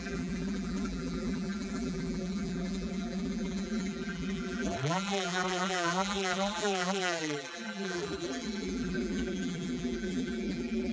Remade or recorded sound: remade